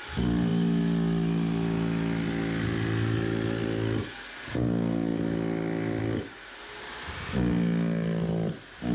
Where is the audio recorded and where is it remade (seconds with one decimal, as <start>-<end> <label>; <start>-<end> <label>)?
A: 0.0-8.9 recorded